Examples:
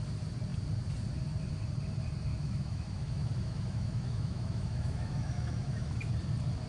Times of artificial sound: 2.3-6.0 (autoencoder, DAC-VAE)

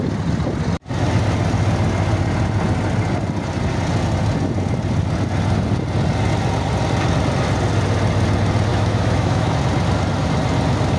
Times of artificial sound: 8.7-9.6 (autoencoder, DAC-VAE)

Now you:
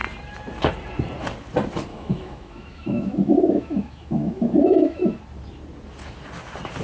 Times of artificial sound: 1.9-5.2 (autoencoder, DAC-VAE)

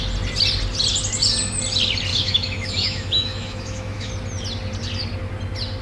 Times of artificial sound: 2.1-4.1 (autoencoder, DAC-VAE)

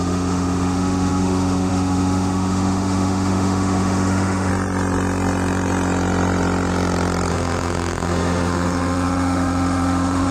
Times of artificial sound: 0.0-4.5 (autoencoder, DAC-VAE); 7.3-10.3